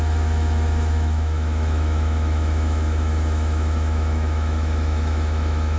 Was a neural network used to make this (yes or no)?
yes